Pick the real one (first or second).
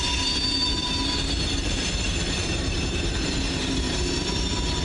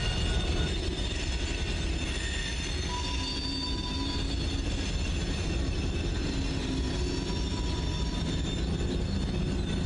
second